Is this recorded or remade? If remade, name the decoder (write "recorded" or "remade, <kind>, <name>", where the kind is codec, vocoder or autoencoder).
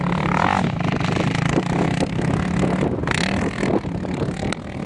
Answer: recorded